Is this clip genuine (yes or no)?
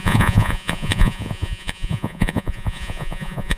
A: no